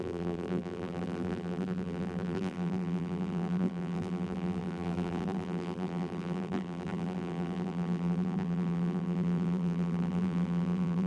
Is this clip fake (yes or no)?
yes